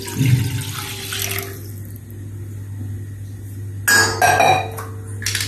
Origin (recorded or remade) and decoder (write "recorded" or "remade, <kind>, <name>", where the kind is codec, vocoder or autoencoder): recorded